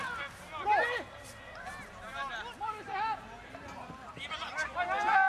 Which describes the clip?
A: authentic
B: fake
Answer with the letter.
A